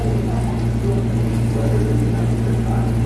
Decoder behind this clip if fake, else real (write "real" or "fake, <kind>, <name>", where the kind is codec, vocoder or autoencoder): real